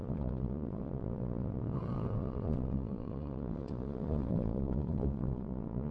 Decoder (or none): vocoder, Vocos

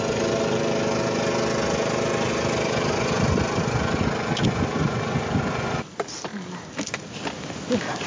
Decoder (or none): none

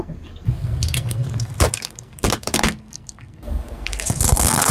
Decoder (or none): codec, SNAC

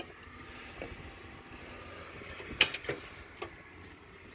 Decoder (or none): none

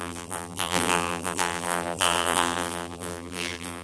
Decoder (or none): vocoder, BigVGAN v2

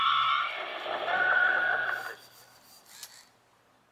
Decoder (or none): none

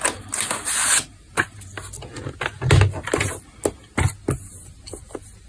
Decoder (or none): none